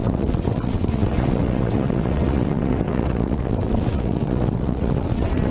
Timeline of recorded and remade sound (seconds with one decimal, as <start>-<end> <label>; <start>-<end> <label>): 0.0-5.5 remade